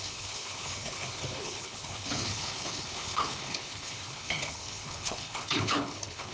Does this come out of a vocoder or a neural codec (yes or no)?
yes